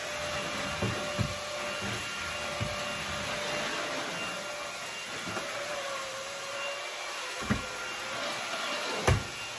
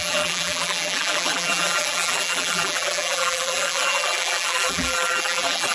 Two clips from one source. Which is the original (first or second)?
first